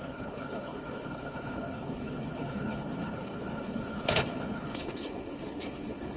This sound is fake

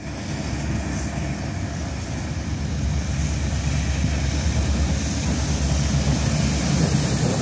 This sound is real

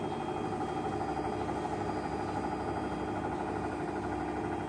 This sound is real